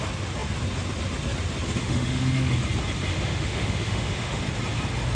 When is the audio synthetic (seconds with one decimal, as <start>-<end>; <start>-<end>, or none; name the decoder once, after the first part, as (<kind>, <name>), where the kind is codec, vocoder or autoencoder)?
1.8-2.5 (autoencoder, DAC-VAE); 3.1-4.4

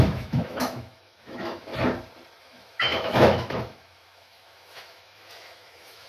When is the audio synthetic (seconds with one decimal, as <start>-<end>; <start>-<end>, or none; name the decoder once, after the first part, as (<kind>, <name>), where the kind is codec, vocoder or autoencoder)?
0.0-1.7 (autoencoder, DAC-VAE); 2.4-6.1